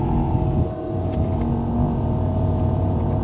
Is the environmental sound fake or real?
real